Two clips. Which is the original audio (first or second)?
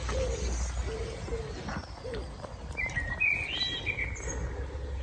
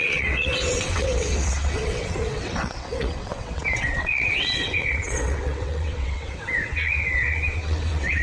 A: first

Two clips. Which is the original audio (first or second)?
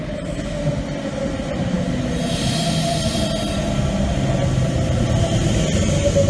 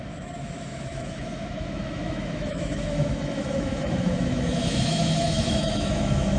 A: first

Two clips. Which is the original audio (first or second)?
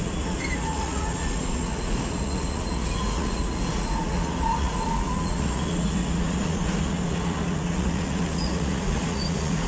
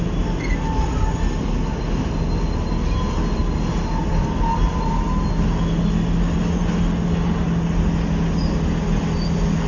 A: second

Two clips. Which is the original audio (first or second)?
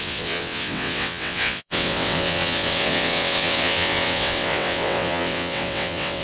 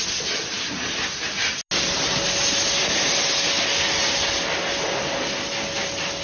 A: second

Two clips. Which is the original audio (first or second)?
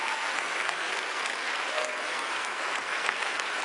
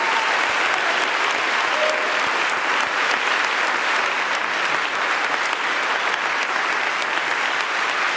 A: second